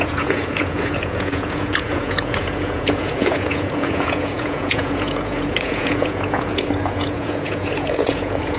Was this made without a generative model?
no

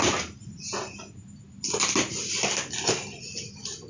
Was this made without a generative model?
yes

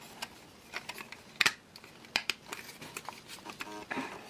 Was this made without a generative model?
yes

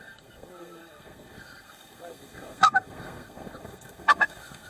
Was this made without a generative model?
no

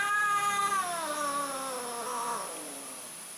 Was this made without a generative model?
yes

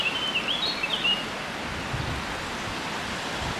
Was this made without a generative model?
yes